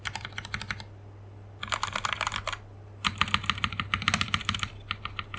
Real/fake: real